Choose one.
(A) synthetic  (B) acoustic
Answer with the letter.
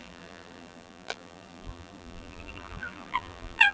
A